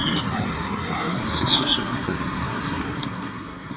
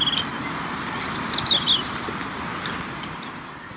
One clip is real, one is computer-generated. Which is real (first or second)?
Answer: second